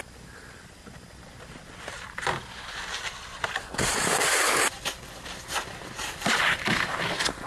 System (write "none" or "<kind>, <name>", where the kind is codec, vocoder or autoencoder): none